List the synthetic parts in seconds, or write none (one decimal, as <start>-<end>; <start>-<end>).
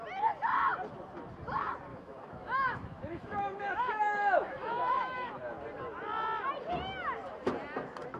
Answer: 1.9-5.3